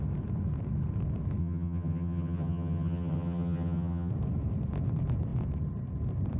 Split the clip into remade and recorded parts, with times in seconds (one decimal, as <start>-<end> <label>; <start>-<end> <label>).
0.0-1.4 recorded; 1.4-4.1 remade; 4.1-6.4 recorded